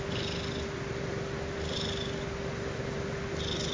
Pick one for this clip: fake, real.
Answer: real